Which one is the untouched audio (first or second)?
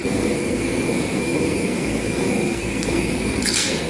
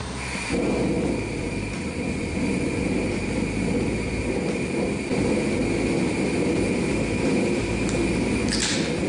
second